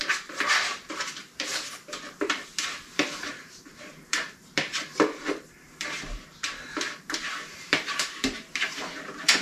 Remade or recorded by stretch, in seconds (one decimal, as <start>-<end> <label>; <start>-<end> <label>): 0.0-1.2 recorded; 1.2-4.7 remade; 4.7-5.3 recorded; 5.3-9.4 remade